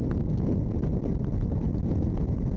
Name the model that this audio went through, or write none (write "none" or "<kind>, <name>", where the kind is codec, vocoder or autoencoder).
none